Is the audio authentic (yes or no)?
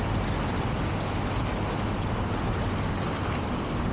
yes